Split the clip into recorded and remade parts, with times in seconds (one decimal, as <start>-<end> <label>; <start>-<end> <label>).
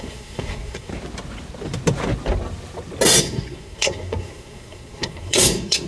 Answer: 0.0-0.9 remade; 0.9-3.2 recorded; 3.2-5.9 remade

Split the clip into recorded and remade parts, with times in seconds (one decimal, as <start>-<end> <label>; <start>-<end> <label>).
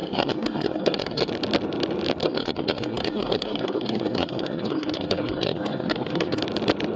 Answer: 0.0-1.3 remade; 1.3-2.2 recorded; 2.2-6.4 remade; 6.4-7.0 recorded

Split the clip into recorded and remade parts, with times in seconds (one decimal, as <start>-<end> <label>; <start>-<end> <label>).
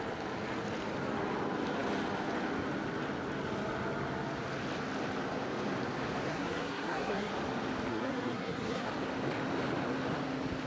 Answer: 0.0-6.3 recorded; 6.3-7.3 remade; 7.3-7.9 recorded; 7.9-8.9 remade; 8.9-10.7 recorded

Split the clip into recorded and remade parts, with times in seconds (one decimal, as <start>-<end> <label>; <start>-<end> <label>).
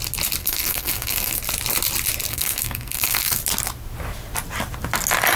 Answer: 0.0-0.4 recorded; 0.4-1.4 remade; 1.4-2.3 recorded; 2.3-3.4 remade; 3.4-5.4 recorded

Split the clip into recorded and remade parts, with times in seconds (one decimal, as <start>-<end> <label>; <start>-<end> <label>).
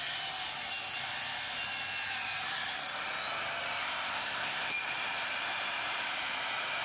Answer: 0.0-3.8 recorded; 3.8-4.7 remade; 4.7-6.8 recorded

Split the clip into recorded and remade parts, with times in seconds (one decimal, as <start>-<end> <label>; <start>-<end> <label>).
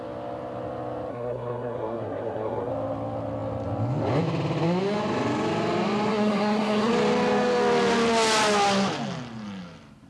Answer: 0.0-1.1 recorded; 1.1-2.7 remade; 2.7-6.1 recorded; 6.1-6.9 remade; 6.9-10.1 recorded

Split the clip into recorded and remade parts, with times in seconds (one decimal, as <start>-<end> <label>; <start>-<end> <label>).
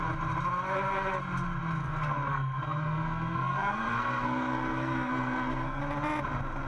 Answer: 0.0-1.8 recorded; 1.8-5.8 remade; 5.8-6.7 recorded